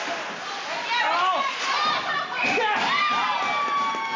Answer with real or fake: real